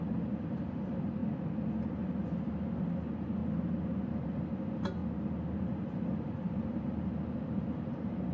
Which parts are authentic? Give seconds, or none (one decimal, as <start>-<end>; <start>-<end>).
1.2-2.5; 3.4-4.1; 5.0-5.6